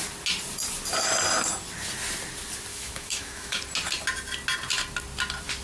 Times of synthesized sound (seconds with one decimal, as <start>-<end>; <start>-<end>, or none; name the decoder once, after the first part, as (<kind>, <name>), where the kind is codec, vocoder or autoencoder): 2.7-3.6 (autoencoder, DAC-VAE)